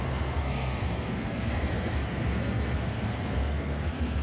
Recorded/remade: remade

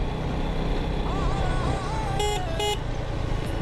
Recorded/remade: recorded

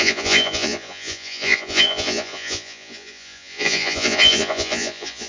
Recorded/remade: remade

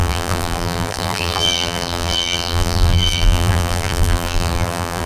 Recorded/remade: remade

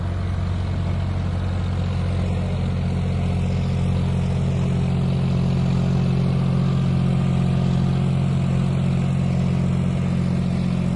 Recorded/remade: recorded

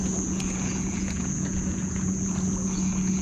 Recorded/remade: remade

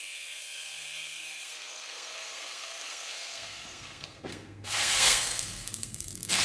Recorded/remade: remade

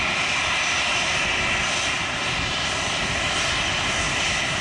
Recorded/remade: recorded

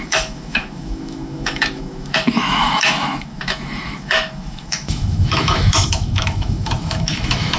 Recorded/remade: remade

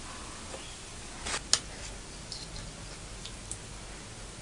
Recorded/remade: recorded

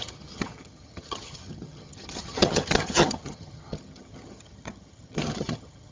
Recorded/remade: remade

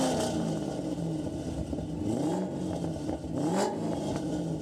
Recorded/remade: recorded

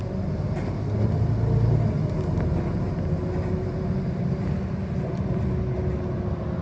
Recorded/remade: recorded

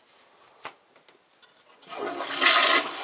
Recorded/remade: recorded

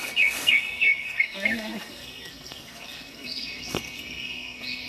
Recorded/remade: remade